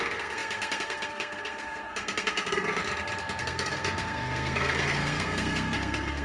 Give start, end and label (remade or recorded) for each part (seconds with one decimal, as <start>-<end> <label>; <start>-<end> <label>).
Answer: 0.0-2.8 remade; 2.8-3.4 recorded; 3.4-6.2 remade